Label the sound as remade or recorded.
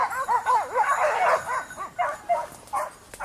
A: recorded